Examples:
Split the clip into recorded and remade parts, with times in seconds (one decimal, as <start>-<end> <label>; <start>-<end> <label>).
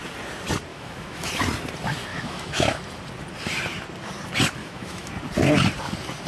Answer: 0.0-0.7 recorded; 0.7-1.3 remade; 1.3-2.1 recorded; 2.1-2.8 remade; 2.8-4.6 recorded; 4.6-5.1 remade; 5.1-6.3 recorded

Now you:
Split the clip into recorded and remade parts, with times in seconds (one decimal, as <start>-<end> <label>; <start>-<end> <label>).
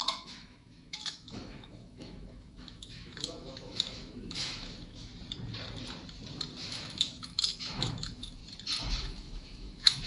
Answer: 0.0-5.1 remade; 5.1-6.7 recorded; 6.7-8.4 remade; 8.4-9.0 recorded; 9.0-10.1 remade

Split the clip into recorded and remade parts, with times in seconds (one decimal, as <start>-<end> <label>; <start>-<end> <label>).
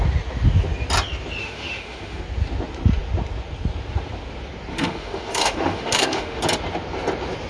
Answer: 0.0-1.4 recorded; 1.4-2.2 remade; 2.2-4.7 recorded; 4.7-6.4 remade; 6.4-7.5 recorded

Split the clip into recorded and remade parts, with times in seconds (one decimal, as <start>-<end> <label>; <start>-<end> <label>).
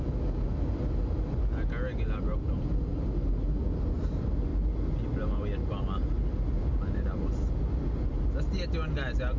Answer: 0.0-9.4 recorded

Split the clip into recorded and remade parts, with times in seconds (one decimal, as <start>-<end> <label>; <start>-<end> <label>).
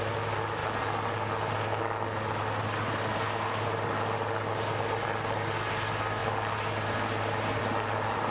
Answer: 0.0-8.3 recorded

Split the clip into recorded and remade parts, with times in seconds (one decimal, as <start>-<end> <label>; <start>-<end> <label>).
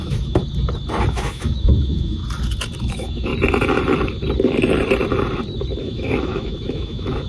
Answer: 0.0-0.4 remade; 0.4-1.1 recorded; 1.1-2.2 remade; 2.2-2.8 recorded; 2.8-3.3 remade; 3.3-5.8 recorded; 5.8-7.3 remade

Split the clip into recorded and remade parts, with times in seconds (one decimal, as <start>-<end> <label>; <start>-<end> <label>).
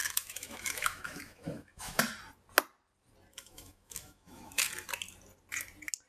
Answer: 0.0-2.0 remade; 2.0-3.3 recorded; 3.3-4.7 remade; 4.7-6.1 recorded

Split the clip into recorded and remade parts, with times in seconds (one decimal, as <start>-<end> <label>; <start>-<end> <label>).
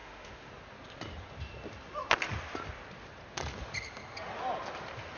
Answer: 0.0-0.5 remade; 0.5-5.2 recorded